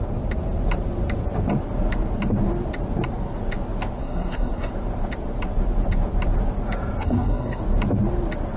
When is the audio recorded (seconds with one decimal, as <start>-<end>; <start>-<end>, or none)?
0.0-4.0; 4.7-7.0; 7.6-8.6